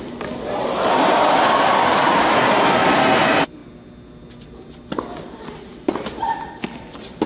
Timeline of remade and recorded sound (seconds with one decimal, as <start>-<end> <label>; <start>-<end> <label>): 0.0-3.6 remade; 3.6-6.5 recorded; 6.5-7.3 remade